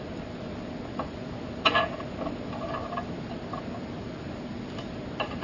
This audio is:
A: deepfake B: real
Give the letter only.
B